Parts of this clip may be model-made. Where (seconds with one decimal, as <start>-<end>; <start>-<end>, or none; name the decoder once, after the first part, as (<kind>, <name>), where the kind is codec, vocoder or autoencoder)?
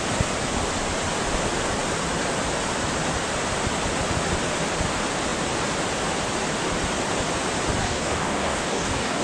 7.8-9.2 (codec, DAC)